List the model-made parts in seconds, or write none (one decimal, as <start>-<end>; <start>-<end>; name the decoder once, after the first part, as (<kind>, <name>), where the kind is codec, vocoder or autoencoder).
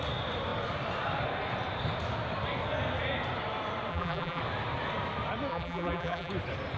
3.9-4.4 (vocoder, BigVGAN v2); 5.5-6.3